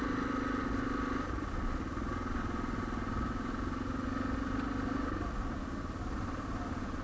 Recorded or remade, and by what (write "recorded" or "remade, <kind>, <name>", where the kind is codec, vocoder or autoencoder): recorded